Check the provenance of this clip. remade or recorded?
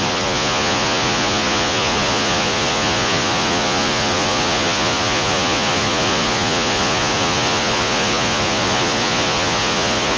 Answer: remade